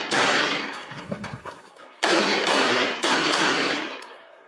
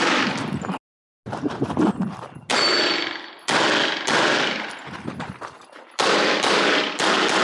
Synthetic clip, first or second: first